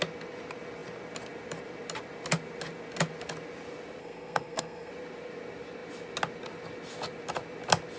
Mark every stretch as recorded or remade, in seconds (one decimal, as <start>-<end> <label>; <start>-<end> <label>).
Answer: 0.0-4.0 recorded; 4.0-4.9 remade; 4.9-8.0 recorded